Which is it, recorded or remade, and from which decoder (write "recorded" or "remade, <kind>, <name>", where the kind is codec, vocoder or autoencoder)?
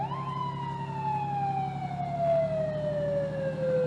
recorded